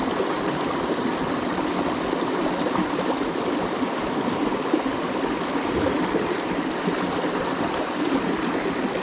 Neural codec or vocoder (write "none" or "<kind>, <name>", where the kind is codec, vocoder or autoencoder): none